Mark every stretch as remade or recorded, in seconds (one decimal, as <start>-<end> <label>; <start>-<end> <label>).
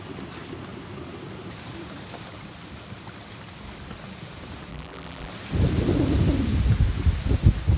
0.0-4.7 recorded; 4.7-5.3 remade; 5.3-7.8 recorded